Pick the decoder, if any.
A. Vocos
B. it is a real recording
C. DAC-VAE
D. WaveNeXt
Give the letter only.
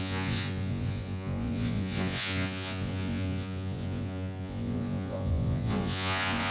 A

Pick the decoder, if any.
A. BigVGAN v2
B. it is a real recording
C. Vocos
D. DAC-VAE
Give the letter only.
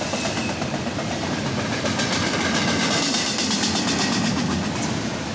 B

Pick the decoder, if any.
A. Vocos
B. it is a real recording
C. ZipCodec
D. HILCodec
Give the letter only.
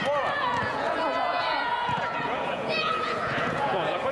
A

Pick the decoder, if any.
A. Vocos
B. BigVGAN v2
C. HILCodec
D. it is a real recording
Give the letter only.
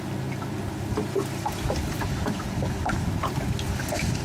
D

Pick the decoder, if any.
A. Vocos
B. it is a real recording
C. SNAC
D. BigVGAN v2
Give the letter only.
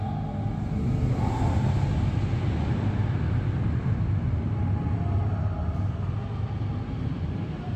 B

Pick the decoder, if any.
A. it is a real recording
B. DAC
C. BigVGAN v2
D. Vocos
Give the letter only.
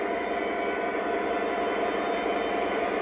A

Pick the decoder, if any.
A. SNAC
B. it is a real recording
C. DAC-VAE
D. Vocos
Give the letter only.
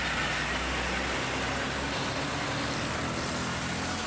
B